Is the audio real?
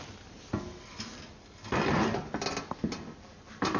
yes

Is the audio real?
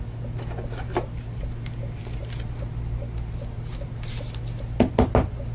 yes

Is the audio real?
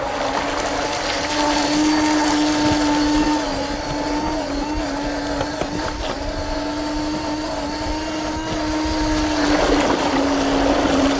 yes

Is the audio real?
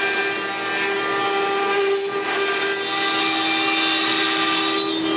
yes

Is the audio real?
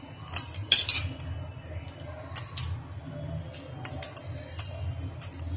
yes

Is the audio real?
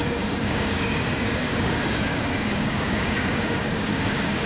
no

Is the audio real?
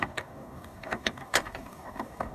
no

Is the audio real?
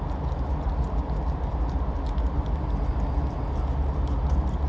yes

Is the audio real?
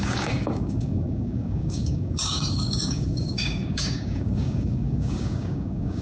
no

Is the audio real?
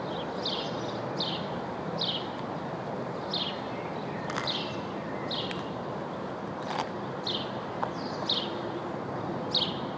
yes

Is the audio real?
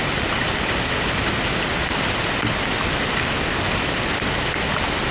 yes